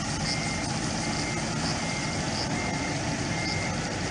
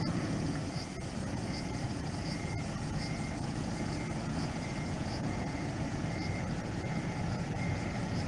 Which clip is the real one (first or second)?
first